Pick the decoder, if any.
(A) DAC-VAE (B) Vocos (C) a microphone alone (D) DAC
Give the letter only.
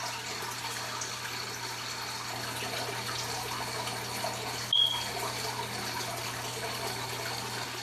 C